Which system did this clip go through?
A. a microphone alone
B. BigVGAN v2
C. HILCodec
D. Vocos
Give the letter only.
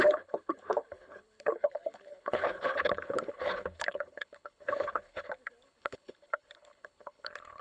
C